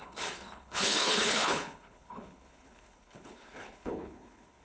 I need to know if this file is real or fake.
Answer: fake